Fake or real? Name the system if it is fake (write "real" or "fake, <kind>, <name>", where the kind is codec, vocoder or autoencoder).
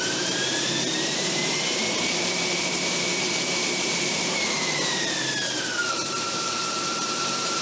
fake, vocoder, BigVGAN v2